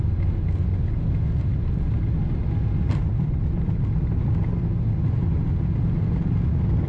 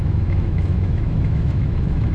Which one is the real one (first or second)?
first